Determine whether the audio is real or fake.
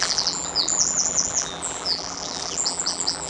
fake